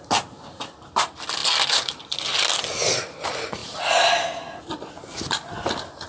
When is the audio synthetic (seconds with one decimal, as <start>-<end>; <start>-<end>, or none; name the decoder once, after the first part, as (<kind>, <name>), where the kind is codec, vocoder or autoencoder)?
none